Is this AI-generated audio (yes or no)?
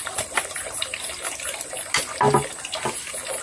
no